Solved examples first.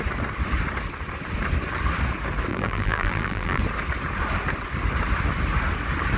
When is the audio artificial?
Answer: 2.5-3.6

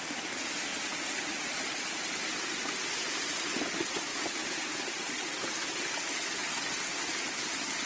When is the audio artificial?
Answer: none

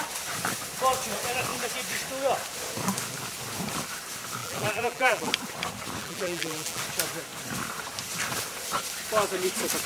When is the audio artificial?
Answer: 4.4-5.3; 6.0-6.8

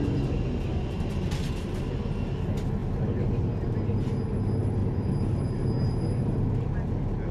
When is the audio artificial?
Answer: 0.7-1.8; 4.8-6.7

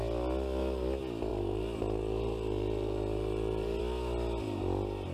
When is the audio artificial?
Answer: 1.3-3.8

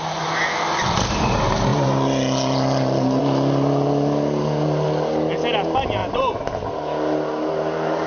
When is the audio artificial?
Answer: 6.0-6.5